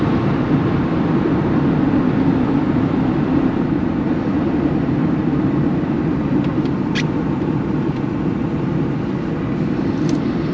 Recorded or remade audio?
remade